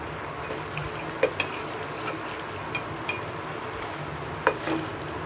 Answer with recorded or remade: recorded